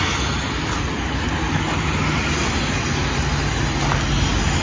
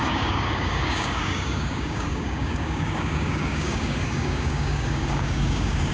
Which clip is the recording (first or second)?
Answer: first